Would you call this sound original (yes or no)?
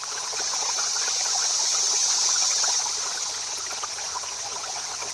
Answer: no